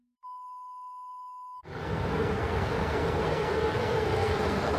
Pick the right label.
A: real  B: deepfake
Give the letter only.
B